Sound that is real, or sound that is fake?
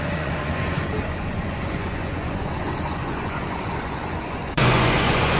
fake